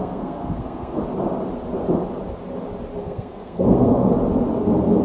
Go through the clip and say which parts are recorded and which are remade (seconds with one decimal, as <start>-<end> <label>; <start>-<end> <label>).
0.0-1.0 remade; 1.0-3.0 recorded; 3.0-4.1 remade; 4.1-5.0 recorded